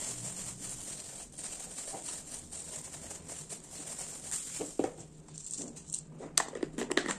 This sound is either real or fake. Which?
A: real